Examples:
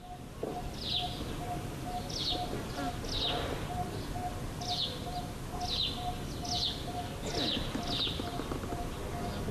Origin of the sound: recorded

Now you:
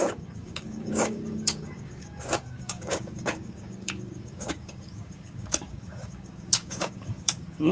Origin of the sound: remade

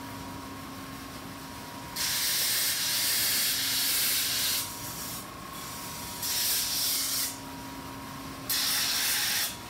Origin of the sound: recorded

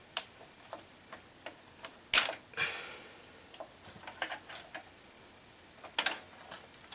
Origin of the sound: recorded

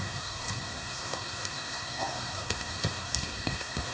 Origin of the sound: remade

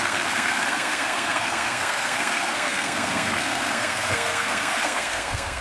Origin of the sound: remade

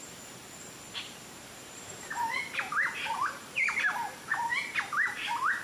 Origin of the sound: remade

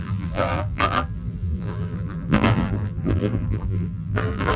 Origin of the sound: remade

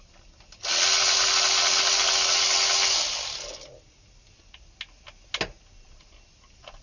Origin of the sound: recorded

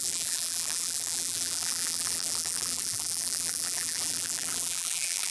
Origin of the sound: remade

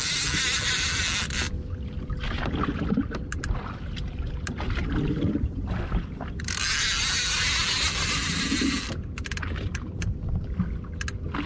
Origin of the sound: recorded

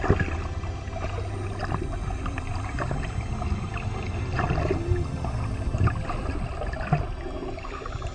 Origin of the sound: recorded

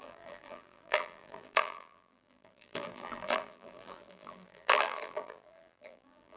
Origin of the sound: remade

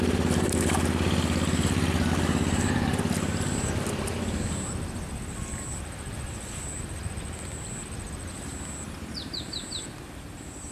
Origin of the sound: recorded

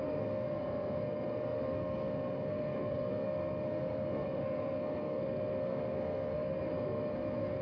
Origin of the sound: remade